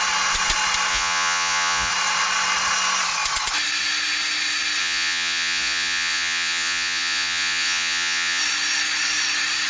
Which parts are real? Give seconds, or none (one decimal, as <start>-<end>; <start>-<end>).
0.0-0.9; 1.9-4.8; 8.4-9.7